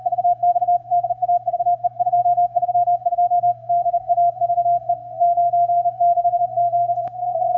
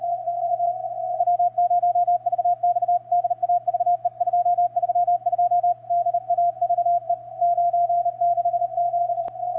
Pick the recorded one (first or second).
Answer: second